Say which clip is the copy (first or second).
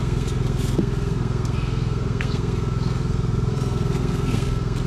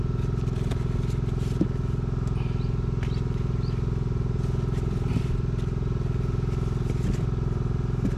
first